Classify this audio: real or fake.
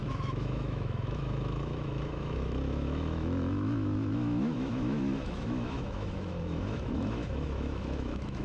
fake